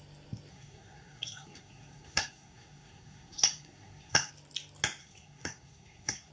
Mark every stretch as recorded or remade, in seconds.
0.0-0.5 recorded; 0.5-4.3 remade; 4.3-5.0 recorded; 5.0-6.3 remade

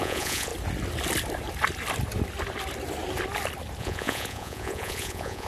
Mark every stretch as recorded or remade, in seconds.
0.0-0.5 remade; 0.5-3.8 recorded; 3.8-5.5 remade

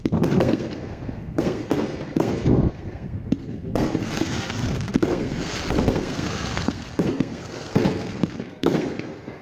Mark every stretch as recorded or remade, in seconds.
0.0-9.4 remade

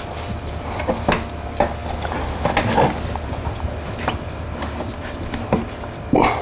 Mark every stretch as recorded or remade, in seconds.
0.0-6.4 recorded

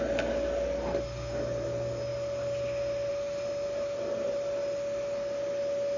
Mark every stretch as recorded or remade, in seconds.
0.0-6.0 recorded

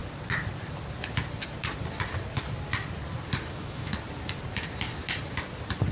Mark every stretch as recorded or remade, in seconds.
0.0-3.5 recorded; 3.5-3.9 remade; 3.9-5.9 recorded

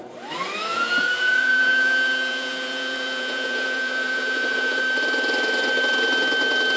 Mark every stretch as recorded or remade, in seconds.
0.0-0.7 recorded; 0.7-4.8 remade; 4.8-6.8 recorded